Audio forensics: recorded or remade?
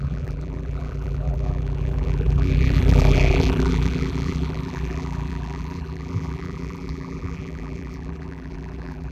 remade